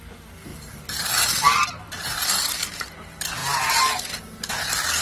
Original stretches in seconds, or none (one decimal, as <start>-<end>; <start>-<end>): 0.0-0.5; 1.8-5.0